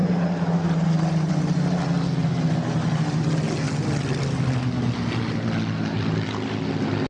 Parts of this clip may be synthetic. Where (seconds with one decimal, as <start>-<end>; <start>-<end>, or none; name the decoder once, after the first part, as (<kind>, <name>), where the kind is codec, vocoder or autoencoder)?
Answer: none